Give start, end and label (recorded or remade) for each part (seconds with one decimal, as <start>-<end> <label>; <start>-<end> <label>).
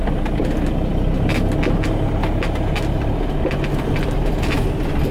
0.0-5.1 recorded